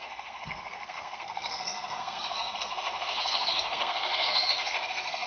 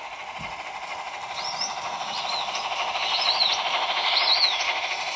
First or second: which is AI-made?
first